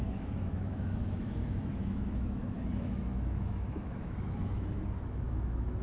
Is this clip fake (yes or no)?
yes